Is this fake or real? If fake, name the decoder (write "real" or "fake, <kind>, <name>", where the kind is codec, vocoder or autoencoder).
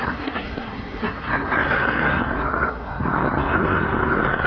fake, codec, SNAC